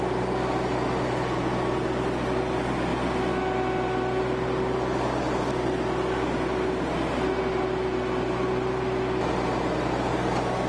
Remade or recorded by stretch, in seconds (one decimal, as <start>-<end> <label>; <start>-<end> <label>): 0.0-10.7 recorded

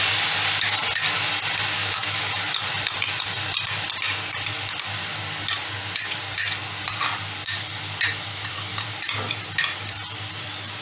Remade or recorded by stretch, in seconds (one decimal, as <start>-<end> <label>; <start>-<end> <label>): 0.0-1.8 recorded; 1.8-2.3 remade; 2.3-10.8 recorded